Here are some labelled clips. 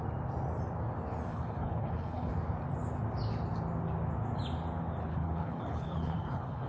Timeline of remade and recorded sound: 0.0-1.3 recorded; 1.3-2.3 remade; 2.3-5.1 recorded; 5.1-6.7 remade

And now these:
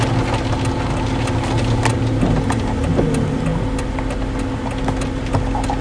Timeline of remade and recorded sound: 0.0-5.8 recorded

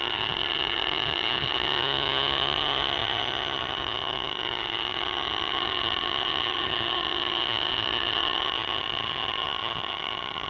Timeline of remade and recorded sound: 0.0-10.5 remade